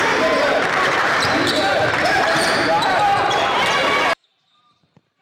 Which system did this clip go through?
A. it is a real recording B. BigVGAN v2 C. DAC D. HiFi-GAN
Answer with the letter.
B